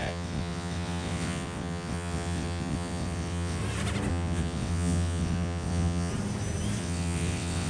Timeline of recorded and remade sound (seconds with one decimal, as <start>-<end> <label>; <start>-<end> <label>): 0.0-3.6 remade; 3.6-4.1 recorded; 4.1-6.1 remade; 6.1-6.8 recorded; 6.8-7.7 remade